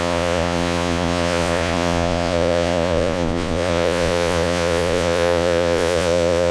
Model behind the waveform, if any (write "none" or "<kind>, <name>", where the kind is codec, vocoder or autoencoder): vocoder, Vocos